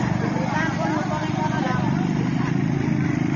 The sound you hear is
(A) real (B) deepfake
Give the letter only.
A